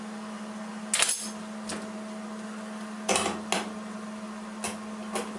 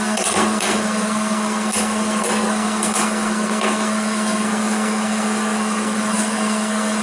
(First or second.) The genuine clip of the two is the first